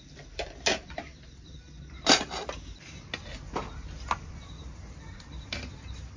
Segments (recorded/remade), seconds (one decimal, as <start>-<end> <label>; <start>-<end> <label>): 0.0-6.2 recorded